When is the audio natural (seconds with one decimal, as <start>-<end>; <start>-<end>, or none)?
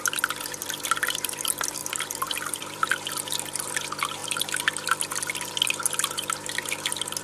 0.0-0.6; 1.4-1.8; 2.9-4.2; 5.5-7.2